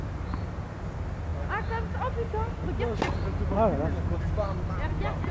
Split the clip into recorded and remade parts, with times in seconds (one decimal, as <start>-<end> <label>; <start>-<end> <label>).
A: 0.0-5.3 recorded